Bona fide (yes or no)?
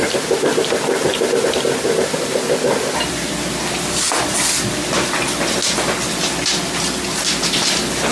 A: yes